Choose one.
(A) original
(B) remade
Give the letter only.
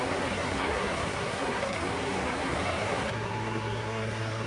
B